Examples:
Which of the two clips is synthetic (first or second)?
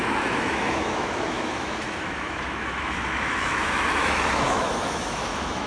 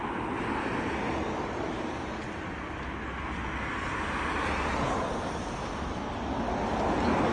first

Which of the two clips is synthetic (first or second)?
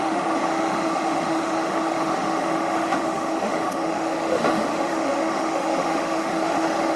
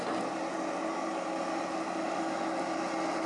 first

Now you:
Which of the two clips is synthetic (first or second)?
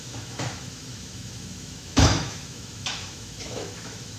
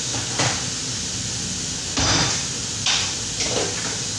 first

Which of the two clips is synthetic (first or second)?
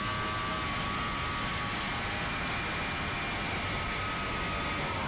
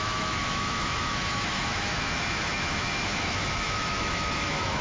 second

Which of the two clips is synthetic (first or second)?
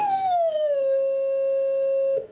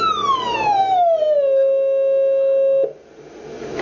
first